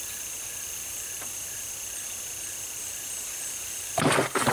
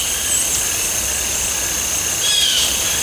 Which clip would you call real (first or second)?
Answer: second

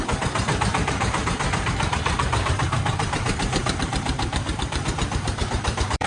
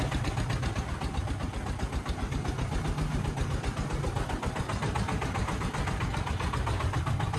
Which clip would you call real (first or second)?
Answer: second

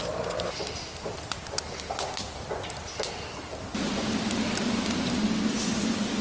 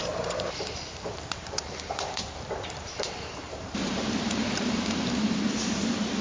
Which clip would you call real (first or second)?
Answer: first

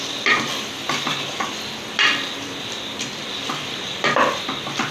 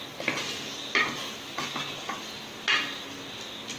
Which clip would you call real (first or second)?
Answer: second